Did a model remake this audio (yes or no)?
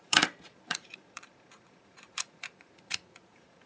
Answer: yes